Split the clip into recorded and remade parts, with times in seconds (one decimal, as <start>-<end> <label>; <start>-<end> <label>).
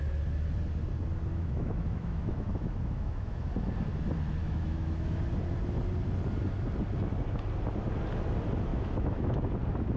0.0-1.3 recorded; 1.3-3.5 remade; 3.5-4.4 recorded; 4.4-5.2 remade; 5.2-8.7 recorded; 8.7-9.4 remade; 9.4-10.0 recorded